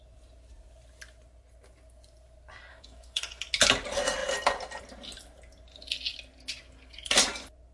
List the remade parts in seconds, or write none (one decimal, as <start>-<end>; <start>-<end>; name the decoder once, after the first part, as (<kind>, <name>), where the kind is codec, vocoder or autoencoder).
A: 2.7-3.4 (codec, DAC)